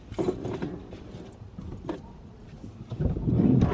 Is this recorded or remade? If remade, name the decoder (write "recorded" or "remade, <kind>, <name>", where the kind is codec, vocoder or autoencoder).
recorded